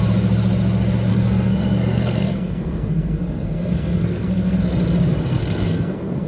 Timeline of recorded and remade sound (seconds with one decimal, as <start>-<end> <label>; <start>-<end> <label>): 0.0-1.1 recorded; 1.1-4.6 remade; 4.6-5.3 recorded; 5.3-6.3 remade